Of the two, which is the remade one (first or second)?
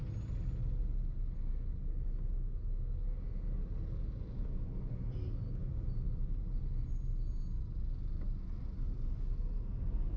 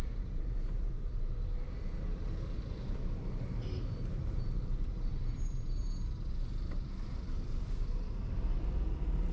second